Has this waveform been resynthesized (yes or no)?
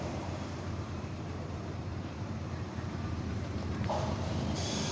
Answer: yes